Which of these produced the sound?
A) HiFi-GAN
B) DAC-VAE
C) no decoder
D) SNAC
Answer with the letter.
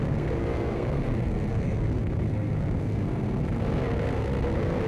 D